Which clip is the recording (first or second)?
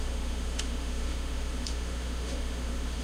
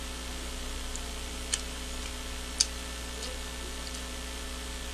second